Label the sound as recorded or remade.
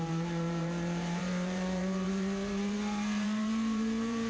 remade